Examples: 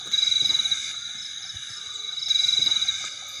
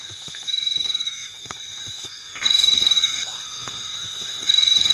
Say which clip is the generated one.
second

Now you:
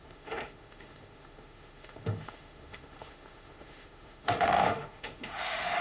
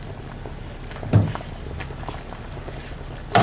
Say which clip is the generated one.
first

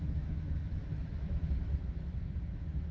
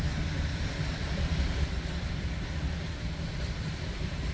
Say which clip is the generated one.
first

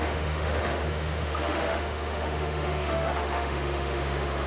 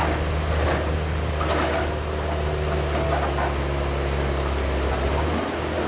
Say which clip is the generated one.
first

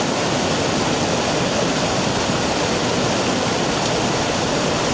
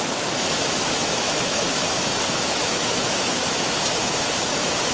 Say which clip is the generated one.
second